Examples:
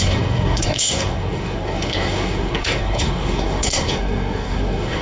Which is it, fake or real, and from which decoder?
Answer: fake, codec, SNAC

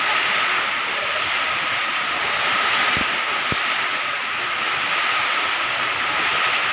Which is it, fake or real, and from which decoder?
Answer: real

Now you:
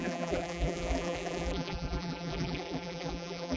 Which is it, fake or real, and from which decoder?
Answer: fake, vocoder, BigVGAN v2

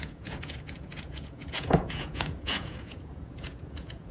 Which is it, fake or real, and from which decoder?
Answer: fake, vocoder, Vocos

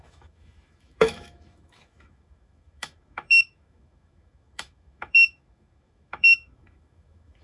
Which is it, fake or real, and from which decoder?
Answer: fake, autoencoder, DAC-VAE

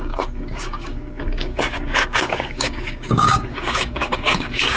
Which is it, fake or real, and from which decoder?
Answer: fake, codec, DAC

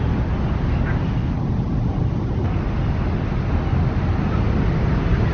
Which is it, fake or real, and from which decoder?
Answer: real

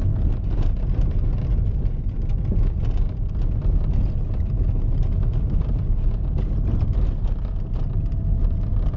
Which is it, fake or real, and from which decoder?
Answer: real